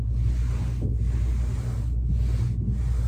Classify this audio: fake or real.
real